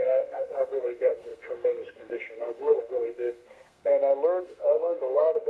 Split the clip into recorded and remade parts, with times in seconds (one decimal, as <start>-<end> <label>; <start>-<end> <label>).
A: 0.0-3.9 remade; 3.9-4.4 recorded; 4.4-5.5 remade